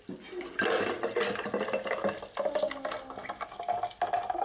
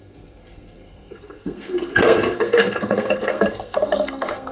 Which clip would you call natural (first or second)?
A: first